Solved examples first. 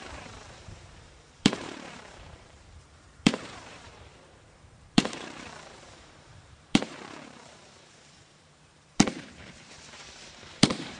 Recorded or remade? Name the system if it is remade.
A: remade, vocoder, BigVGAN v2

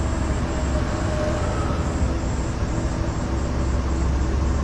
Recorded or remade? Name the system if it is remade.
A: recorded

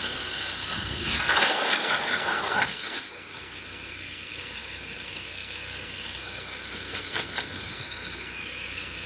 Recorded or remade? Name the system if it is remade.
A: remade, codec, SNAC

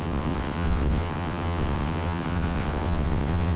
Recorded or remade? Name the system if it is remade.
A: remade, vocoder, WaveNeXt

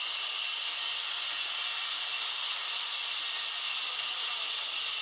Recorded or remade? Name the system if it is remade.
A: recorded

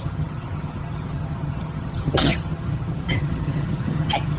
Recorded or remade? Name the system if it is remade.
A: remade, vocoder, HiFi-GAN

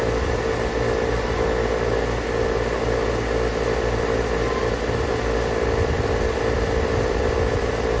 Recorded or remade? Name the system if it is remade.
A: recorded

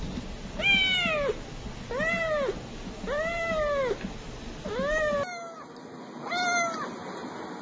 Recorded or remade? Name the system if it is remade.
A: recorded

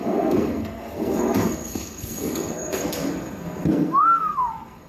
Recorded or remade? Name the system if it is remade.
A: remade, codec, SNAC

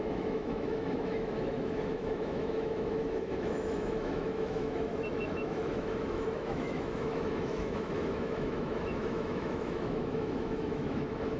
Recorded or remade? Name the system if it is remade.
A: remade, autoencoder, DAC-VAE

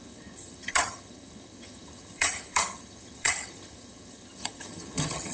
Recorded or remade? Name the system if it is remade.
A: remade, vocoder, HiFi-GAN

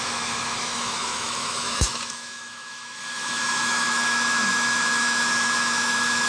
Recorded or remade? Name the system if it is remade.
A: remade, autoencoder, DAC-VAE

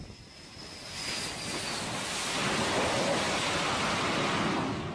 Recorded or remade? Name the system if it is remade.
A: recorded